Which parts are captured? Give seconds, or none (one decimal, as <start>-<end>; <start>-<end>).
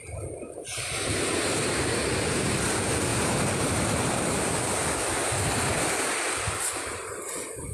0.0-0.7; 2.0-3.1; 4.1-7.7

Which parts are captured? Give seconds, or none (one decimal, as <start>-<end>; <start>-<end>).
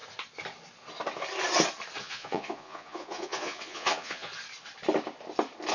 0.0-2.0; 4.3-5.7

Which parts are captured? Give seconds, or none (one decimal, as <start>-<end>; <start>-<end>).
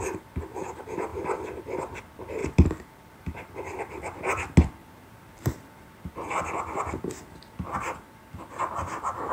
0.0-2.4; 4.2-4.8; 6.5-9.3